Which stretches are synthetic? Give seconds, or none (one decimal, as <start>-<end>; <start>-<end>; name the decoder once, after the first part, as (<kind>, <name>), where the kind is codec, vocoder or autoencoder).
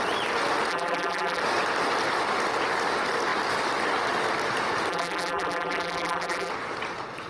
0.7-1.4 (vocoder, BigVGAN v2); 4.9-6.5